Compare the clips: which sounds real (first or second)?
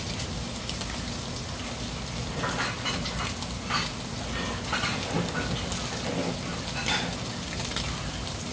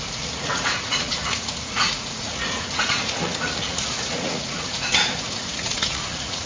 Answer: first